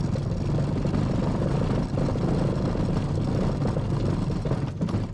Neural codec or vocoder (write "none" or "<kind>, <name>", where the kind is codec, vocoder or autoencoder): none